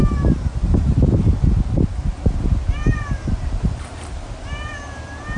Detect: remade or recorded recorded